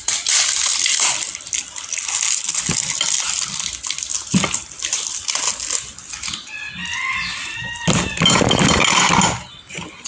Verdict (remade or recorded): recorded